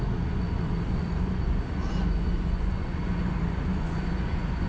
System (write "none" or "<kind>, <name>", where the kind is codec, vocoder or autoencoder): vocoder, Vocos